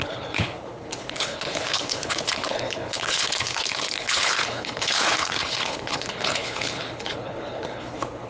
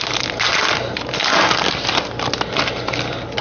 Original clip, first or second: second